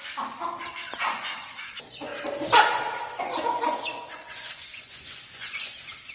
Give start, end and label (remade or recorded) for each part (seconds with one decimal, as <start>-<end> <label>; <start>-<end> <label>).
0.0-0.7 recorded; 0.7-2.1 remade; 2.1-3.2 recorded; 3.2-6.1 remade